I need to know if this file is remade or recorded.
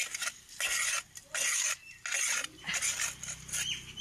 recorded